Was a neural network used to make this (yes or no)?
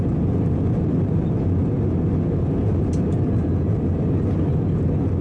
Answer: no